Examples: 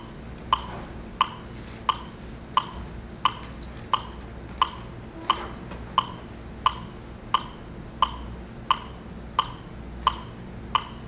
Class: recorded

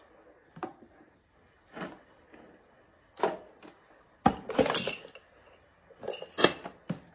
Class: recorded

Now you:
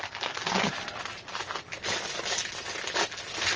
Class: recorded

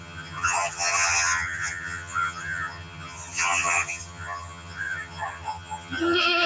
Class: remade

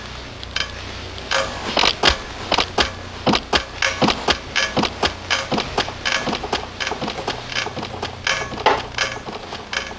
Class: recorded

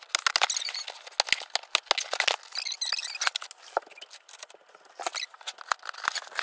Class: recorded